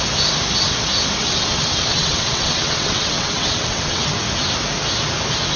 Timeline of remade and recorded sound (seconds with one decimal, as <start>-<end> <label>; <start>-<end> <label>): 0.0-1.2 recorded; 1.2-4.1 remade; 4.1-5.6 recorded